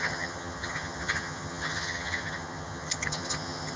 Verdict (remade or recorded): remade